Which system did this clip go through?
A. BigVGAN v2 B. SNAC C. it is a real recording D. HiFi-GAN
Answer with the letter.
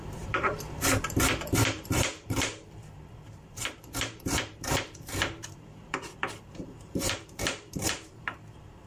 A